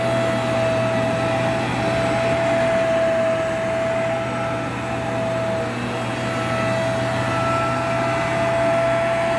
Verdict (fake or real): real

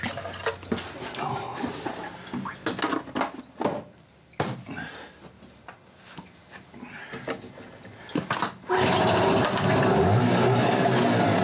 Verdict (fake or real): real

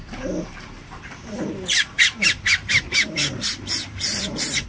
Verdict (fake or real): fake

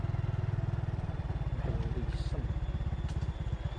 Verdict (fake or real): real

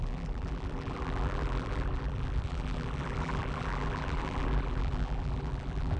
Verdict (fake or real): fake